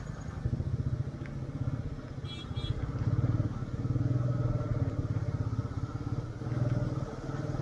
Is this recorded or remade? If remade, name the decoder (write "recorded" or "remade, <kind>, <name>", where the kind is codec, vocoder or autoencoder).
recorded